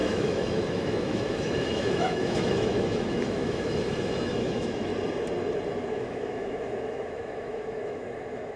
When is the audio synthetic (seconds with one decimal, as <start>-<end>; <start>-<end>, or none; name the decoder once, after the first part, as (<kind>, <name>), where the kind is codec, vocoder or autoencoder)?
0.0-4.9 (autoencoder, DAC-VAE); 5.9-8.6